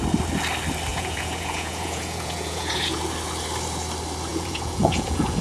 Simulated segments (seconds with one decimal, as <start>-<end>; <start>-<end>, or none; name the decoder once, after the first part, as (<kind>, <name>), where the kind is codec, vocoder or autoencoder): 0.9-3.0 (vocoder, Vocos); 4.3-5.4

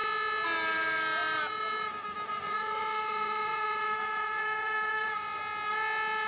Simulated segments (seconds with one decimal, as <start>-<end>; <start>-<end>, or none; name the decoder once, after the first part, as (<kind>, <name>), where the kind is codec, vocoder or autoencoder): 2.3-5.4 (vocoder, Vocos)

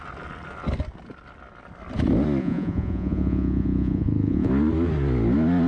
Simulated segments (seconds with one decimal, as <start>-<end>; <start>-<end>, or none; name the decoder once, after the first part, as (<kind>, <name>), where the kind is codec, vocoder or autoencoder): 2.4-4.5 (vocoder, Vocos)

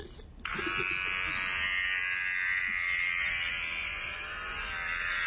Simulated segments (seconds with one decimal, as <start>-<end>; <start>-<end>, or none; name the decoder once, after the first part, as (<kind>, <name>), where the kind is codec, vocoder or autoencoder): 3.8-4.7 (vocoder, Vocos)

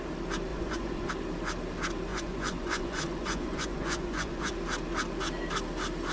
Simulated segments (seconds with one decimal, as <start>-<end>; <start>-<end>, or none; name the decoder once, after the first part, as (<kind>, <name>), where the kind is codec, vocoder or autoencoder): 0.5-1.1 (vocoder, Vocos); 2.1-4.5

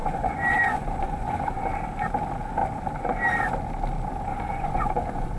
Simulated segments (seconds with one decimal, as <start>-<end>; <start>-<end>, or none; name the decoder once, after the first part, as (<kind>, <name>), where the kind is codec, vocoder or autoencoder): 0.0-1.6 (vocoder, Vocos); 4.3-5.4

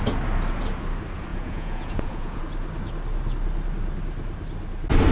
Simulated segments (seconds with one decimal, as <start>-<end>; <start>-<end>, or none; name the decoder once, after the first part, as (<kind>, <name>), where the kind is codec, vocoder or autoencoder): 1.3-2.4 (vocoder, Vocos)